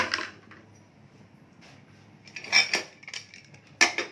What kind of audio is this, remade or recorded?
recorded